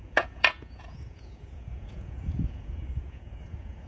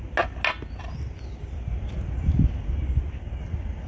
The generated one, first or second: first